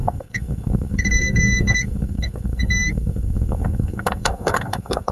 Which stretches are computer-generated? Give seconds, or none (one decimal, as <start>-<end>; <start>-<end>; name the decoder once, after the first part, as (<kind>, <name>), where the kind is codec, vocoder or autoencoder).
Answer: 0.0-5.1 (codec, SNAC)